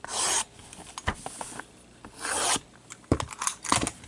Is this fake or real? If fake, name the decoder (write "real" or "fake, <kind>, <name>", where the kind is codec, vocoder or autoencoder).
real